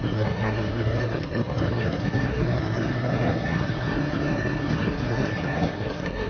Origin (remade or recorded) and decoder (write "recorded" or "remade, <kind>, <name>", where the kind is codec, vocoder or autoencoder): remade, codec, SNAC